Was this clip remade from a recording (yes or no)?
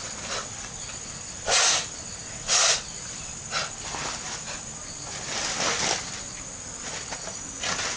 no